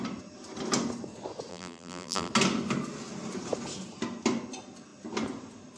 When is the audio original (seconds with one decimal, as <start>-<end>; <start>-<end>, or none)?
0.0-1.5; 2.3-5.8